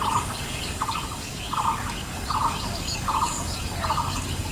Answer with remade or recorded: remade